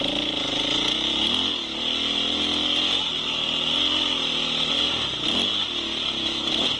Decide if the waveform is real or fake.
real